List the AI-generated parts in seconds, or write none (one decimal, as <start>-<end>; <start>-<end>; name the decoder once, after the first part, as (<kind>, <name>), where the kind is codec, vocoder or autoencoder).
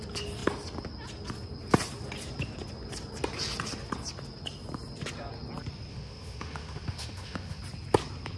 5.9-7.6 (autoencoder, DAC-VAE)